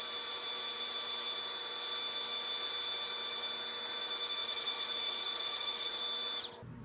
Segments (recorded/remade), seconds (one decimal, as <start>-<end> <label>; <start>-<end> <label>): 0.0-4.4 recorded; 4.4-6.0 remade; 6.0-6.8 recorded